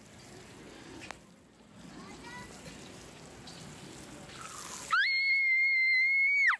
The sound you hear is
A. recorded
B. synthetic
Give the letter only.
A